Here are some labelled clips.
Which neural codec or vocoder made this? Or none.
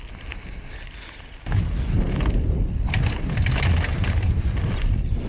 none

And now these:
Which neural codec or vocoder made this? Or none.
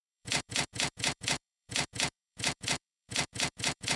vocoder, Vocos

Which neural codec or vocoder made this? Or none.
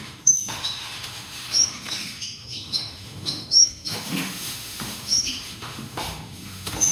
autoencoder, DAC-VAE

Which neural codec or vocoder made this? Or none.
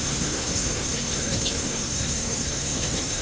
codec, SNAC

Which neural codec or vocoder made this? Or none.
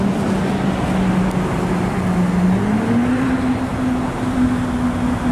none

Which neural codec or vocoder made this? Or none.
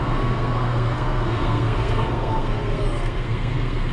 codec, SNAC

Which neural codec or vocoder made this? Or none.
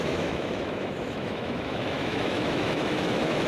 autoencoder, DAC-VAE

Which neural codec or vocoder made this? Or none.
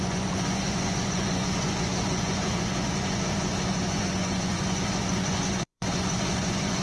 vocoder, Vocos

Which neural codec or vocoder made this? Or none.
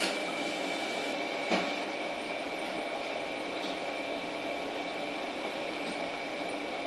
none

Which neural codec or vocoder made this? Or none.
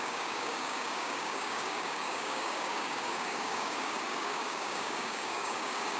codec, DAC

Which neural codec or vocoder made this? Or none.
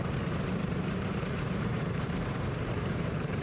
vocoder, BigVGAN v2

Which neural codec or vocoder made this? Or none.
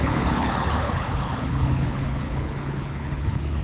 codec, HILCodec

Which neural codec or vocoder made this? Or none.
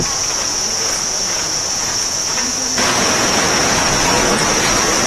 vocoder, Vocos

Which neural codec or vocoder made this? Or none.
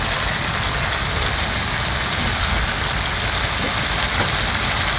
none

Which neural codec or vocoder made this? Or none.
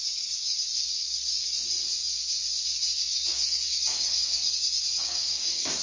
codec, DAC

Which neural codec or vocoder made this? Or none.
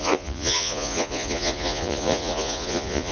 vocoder, Vocos